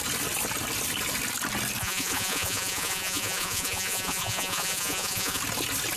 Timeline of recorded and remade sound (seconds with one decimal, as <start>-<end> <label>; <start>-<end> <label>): 0.0-1.8 recorded; 1.8-5.4 remade; 5.4-6.0 recorded